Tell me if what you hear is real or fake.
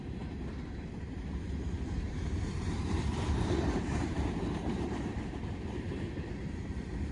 fake